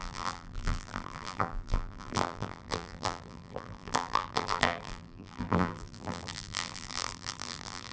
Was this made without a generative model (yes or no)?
no